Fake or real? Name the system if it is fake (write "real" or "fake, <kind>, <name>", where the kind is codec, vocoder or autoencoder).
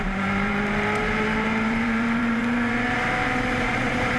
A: fake, vocoder, BigVGAN v2